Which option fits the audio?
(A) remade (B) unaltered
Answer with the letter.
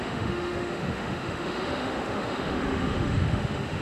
A